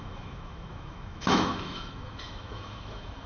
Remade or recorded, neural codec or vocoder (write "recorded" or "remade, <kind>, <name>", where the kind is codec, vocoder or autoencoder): remade, autoencoder, DAC-VAE